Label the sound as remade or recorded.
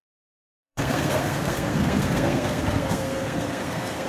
remade